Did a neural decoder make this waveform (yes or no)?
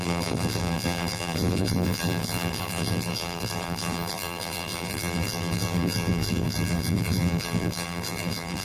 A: yes